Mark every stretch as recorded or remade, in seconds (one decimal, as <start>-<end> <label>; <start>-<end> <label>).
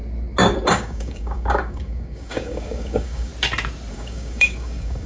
0.0-0.7 recorded; 0.7-3.3 remade; 3.3-3.9 recorded; 3.9-5.1 remade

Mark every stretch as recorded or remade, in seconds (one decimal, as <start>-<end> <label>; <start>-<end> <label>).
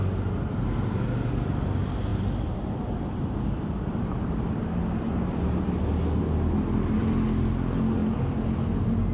0.0-2.1 recorded; 2.1-4.6 remade; 4.6-8.0 recorded; 8.0-8.6 remade; 8.6-9.1 recorded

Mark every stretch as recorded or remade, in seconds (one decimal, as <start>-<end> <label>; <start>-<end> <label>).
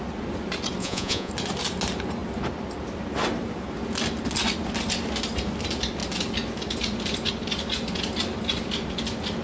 0.0-0.8 recorded; 0.8-1.3 remade; 1.3-9.4 recorded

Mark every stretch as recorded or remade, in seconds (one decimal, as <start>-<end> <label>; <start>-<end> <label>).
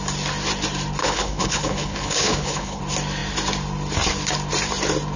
0.0-1.0 recorded; 1.0-2.8 remade; 2.8-5.2 recorded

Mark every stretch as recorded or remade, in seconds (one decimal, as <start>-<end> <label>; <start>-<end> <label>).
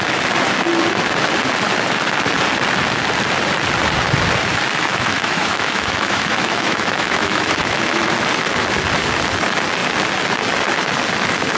0.0-4.9 recorded; 4.9-8.1 remade; 8.1-11.6 recorded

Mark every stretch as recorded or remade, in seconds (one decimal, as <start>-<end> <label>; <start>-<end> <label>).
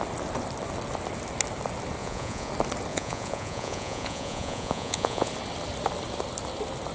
0.0-2.0 recorded; 2.0-2.5 remade; 2.5-2.9 recorded; 2.9-5.3 remade; 5.3-6.9 recorded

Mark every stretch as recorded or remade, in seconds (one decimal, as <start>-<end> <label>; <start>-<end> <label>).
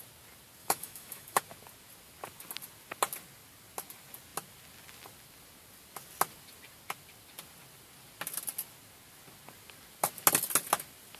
0.0-0.6 recorded; 0.6-1.4 remade; 1.4-11.2 recorded